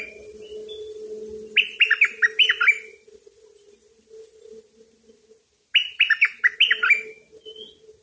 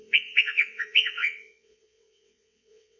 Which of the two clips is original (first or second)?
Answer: first